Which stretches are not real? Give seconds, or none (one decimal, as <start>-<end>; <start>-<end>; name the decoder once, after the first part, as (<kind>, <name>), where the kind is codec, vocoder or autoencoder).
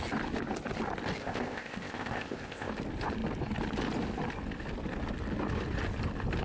1.2-2.7 (codec, ZipCodec)